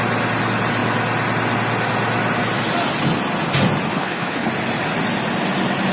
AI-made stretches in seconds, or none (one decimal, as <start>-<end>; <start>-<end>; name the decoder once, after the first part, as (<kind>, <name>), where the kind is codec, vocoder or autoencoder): 3.9-4.5 (codec, HILCodec)